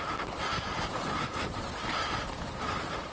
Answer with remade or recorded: recorded